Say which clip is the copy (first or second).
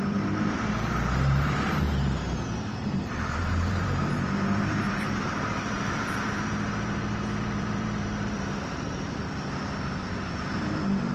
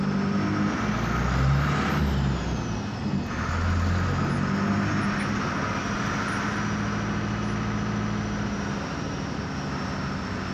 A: first